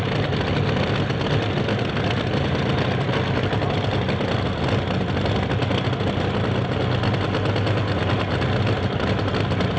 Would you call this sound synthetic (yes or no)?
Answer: no